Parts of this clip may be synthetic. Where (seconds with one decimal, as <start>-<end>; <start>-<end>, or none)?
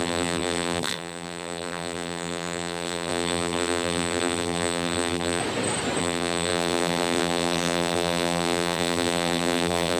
0.0-5.4; 6.0-10.0